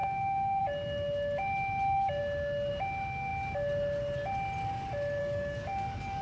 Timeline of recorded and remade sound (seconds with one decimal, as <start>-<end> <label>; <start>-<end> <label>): 0.0-0.6 remade; 0.6-5.2 recorded; 5.2-6.2 remade